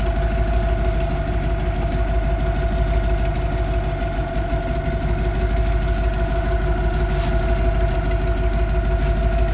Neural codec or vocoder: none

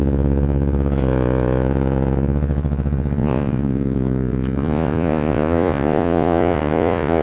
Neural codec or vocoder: vocoder, Vocos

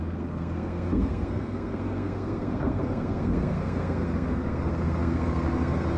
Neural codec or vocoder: codec, SNAC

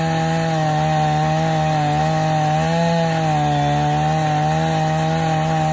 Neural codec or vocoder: none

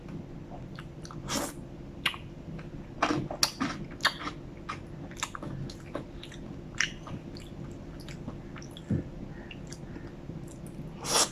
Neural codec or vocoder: none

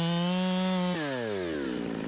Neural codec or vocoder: none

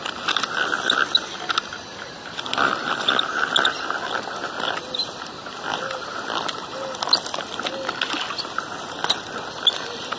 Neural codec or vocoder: none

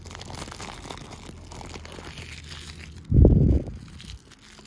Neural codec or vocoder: none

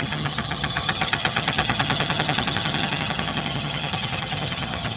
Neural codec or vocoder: vocoder, HiFi-GAN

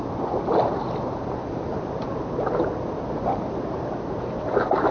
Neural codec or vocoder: none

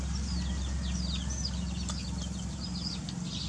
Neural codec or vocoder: none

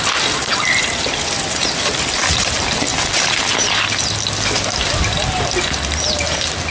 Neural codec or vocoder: none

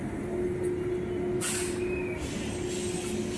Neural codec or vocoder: none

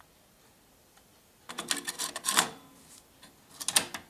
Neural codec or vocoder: none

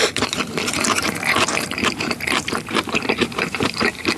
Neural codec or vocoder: vocoder, BigVGAN v2